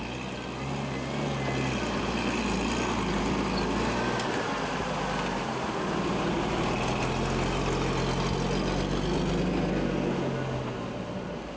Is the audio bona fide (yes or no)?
yes